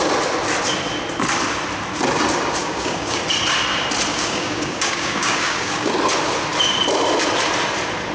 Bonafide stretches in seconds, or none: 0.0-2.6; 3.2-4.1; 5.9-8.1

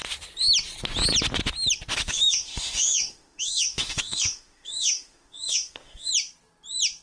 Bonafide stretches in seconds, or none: 0.0-1.9; 6.1-7.0

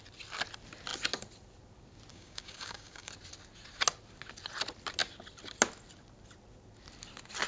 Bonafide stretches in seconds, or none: 0.0-2.1; 3.1-7.5

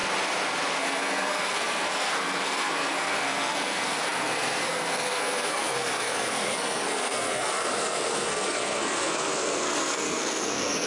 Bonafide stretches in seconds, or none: 0.0-0.8

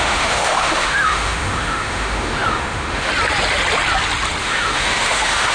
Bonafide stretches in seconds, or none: 3.1-4.4

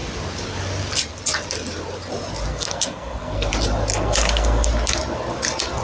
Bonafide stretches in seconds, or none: 0.0-2.5; 3.5-3.9; 4.7-5.8